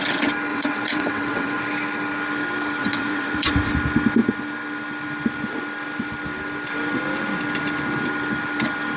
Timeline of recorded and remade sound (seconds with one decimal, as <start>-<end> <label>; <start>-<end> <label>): 0.0-0.5 recorded; 0.5-1.6 remade; 1.6-2.8 recorded; 2.8-3.7 remade; 3.7-9.0 recorded